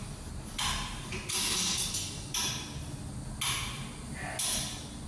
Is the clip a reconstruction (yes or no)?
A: no